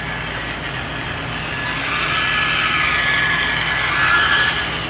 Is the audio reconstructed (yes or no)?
no